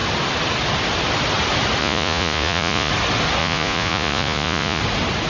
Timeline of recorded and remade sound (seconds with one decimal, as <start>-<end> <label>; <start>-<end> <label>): 0.0-1.8 recorded; 1.8-2.9 remade; 2.9-3.4 recorded; 3.4-4.8 remade; 4.8-5.3 recorded